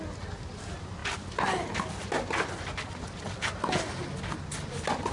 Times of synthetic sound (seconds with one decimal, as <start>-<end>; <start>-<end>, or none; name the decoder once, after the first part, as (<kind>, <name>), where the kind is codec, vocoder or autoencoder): none